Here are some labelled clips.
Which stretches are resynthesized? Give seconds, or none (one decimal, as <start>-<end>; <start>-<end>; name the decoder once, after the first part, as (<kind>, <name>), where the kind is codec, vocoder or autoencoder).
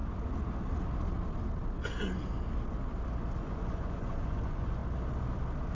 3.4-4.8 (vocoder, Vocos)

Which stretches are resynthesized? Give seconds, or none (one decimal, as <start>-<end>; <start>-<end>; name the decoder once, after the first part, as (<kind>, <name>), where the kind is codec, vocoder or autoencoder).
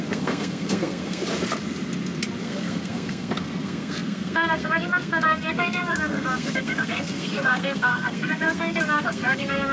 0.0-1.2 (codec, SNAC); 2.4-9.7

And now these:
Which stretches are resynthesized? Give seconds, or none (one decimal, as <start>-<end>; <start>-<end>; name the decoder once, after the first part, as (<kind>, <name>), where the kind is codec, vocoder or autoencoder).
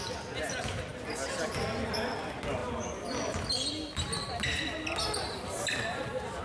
none